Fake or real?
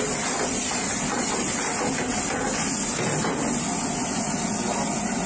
real